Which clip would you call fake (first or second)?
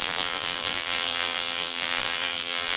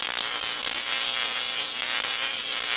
first